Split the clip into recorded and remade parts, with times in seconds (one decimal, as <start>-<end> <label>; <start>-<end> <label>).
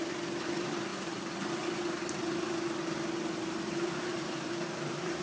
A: 0.0-0.5 recorded; 0.5-0.9 remade; 0.9-3.8 recorded; 3.8-5.2 remade